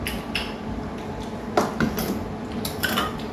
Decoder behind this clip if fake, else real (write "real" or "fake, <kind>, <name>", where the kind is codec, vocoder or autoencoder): real